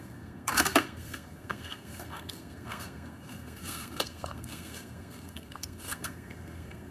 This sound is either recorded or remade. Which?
remade